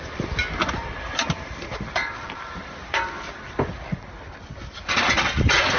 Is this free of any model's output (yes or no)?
yes